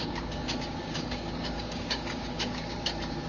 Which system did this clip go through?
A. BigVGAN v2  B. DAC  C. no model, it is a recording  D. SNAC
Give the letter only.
B